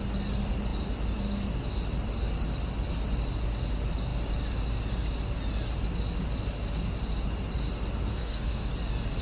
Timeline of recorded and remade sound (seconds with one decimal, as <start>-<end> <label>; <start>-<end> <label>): 0.0-8.1 recorded; 8.1-8.7 remade; 8.7-9.2 recorded